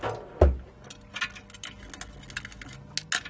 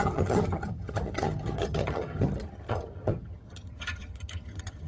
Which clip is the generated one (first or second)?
second